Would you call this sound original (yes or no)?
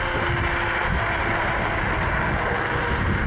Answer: yes